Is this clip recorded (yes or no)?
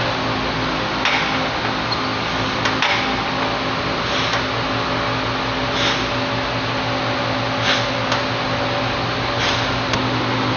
yes